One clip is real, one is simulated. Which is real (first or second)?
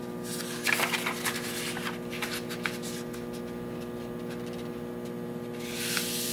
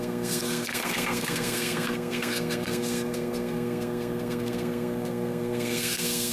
first